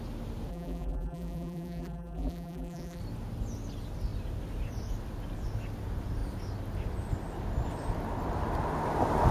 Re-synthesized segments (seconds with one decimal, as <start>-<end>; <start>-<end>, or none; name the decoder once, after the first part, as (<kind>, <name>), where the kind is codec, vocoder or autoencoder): 0.5-3.0 (vocoder, BigVGAN v2)